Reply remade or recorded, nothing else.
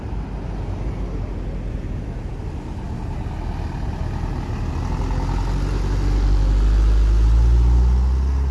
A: recorded